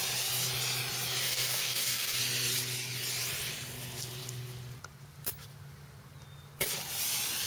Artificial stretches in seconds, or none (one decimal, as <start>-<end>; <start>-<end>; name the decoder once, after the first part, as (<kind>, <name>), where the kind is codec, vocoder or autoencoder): 1.2-2.2 (codec, DAC)